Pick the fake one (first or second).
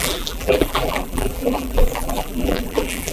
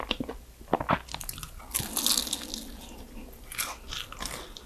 first